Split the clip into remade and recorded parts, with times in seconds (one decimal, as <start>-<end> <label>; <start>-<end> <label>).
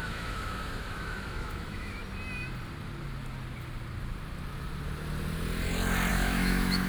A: 0.0-2.0 remade; 2.0-6.1 recorded; 6.1-6.9 remade